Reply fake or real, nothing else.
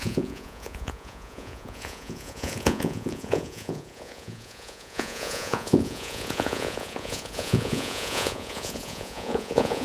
fake